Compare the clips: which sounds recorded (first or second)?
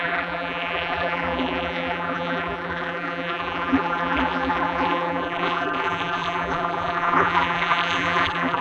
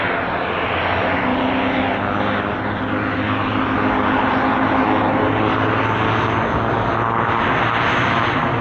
second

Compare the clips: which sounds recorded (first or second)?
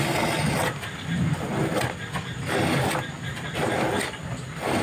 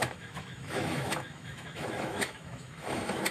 first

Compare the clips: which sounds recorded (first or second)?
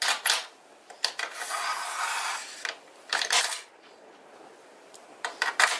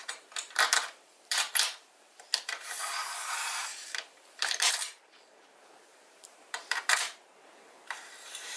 first